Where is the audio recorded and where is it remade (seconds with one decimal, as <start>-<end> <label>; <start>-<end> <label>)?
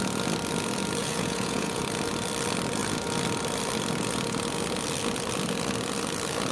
0.0-1.0 recorded; 1.0-1.8 remade; 1.8-6.5 recorded